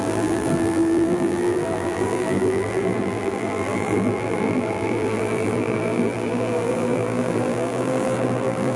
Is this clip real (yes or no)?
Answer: no